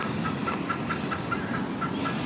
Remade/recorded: recorded